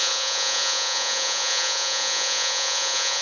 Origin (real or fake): fake